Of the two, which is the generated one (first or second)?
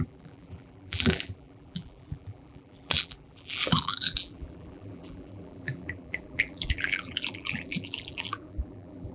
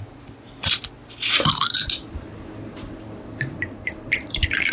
first